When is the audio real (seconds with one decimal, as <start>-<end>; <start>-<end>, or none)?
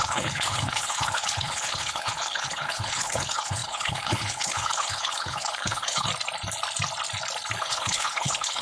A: 6.1-7.6